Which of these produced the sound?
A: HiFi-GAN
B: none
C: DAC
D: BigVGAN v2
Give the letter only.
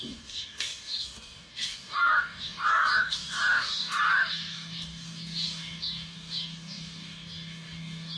C